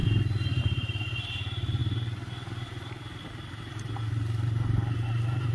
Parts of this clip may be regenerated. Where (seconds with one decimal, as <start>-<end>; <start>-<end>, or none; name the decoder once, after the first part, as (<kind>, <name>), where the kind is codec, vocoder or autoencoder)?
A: none